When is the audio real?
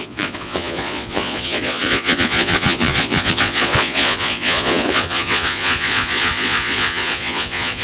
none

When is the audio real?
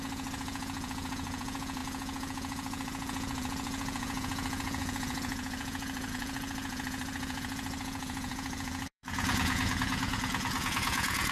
none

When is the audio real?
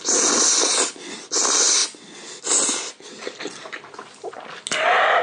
0.0-5.2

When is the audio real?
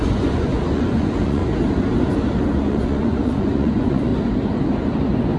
1.4-2.5; 4.1-5.4